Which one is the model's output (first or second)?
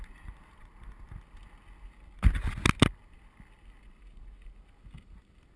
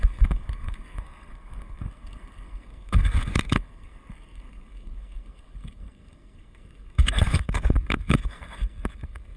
second